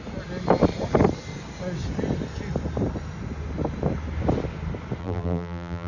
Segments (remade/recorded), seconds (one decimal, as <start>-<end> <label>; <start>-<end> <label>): 0.0-5.0 recorded; 5.0-5.9 remade